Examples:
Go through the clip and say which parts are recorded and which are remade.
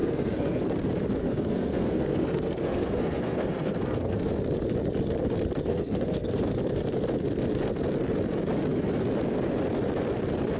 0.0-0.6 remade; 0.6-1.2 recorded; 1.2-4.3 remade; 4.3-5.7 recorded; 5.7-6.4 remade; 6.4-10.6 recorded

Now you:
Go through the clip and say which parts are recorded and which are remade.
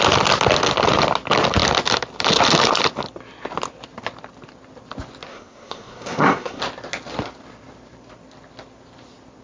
0.0-5.3 recorded; 5.3-6.6 remade; 6.6-9.4 recorded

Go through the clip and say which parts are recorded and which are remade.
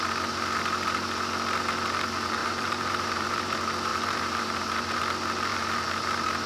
0.0-2.4 recorded; 2.4-3.5 remade; 3.5-3.9 recorded; 3.9-5.0 remade; 5.0-5.5 recorded; 5.5-6.5 remade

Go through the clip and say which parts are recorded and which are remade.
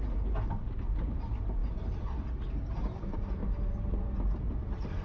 0.0-5.0 recorded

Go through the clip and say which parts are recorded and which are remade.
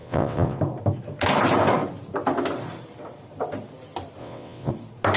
0.0-0.6 remade; 0.6-4.2 recorded; 4.2-4.7 remade; 4.7-5.2 recorded